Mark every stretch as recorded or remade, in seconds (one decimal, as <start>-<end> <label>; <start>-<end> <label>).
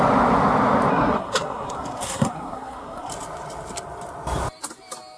0.0-0.9 recorded; 0.9-3.1 remade; 3.1-5.2 recorded